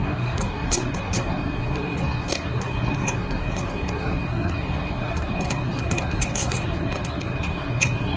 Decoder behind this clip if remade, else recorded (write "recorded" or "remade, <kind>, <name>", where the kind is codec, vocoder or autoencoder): remade, codec, SNAC